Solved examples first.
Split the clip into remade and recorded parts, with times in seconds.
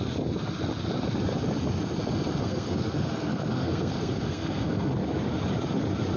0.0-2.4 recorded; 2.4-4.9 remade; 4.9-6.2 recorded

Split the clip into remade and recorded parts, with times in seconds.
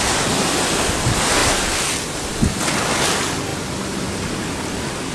0.0-5.1 recorded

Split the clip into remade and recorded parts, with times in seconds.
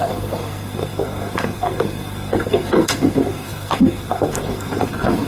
0.0-5.3 remade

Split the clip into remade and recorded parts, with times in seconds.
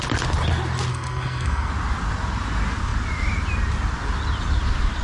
0.0-0.9 recorded; 0.9-1.7 remade; 1.7-5.0 recorded